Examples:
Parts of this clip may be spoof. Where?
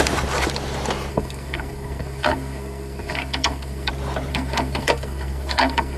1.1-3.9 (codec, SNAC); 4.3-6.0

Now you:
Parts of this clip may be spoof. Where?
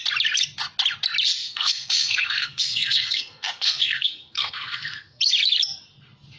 1.4-5.2 (codec, SNAC)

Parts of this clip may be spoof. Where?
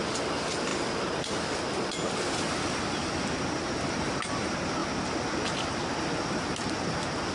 none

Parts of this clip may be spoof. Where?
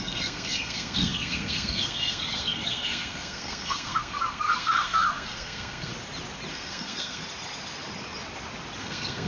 0.0-5.9 (codec, SNAC); 6.5-7.2; 8.8-9.3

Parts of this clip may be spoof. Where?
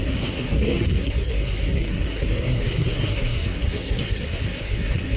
0.0-5.2 (codec, SNAC)